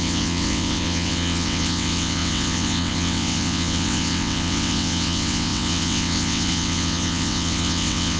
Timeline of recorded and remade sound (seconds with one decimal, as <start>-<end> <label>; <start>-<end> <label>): 0.0-8.2 remade